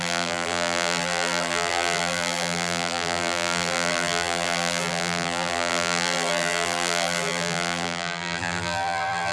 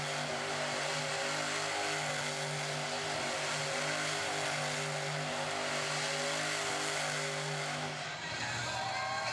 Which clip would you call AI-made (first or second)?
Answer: first